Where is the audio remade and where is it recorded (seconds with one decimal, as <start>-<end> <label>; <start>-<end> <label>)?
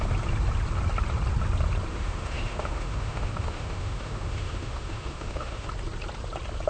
0.0-1.9 recorded; 1.9-5.7 remade; 5.7-6.7 recorded